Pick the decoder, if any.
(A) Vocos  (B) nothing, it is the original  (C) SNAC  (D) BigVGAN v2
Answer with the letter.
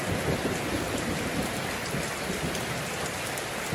D